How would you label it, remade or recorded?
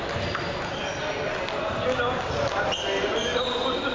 recorded